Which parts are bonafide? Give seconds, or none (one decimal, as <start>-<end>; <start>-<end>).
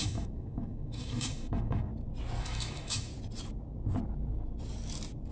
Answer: 1.9-2.4; 3.1-5.3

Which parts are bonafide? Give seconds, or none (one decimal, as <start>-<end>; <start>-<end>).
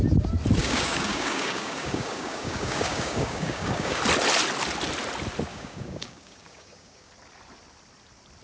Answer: 0.0-0.6; 4.0-5.5; 7.1-8.4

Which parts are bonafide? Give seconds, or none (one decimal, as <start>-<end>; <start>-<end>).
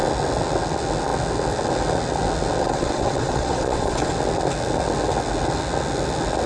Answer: 0.0-2.6; 4.1-6.5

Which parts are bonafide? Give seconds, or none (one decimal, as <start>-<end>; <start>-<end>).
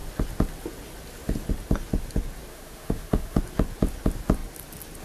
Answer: 0.0-2.5; 3.4-5.0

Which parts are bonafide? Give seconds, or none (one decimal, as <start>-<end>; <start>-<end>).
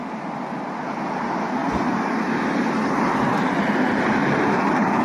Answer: 0.0-5.0